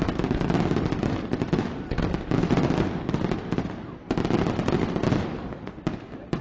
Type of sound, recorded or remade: recorded